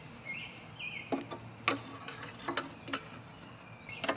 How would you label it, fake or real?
real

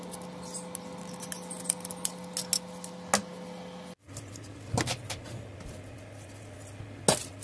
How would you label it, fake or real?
real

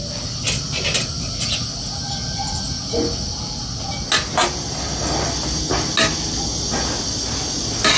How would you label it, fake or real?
real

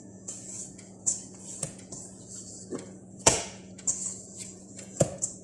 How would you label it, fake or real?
fake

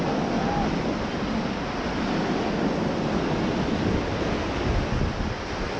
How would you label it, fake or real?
real